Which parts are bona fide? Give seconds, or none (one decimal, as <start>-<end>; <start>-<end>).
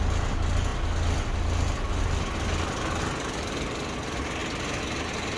0.0-5.4